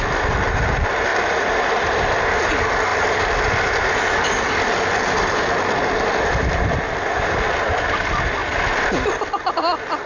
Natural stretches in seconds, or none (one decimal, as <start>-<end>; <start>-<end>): 0.0-1.1; 2.2-2.9; 7.8-8.4; 9.1-10.1